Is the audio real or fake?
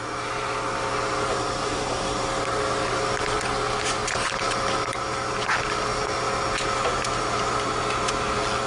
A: real